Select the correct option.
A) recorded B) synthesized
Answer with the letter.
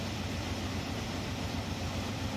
B